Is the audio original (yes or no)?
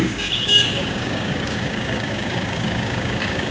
no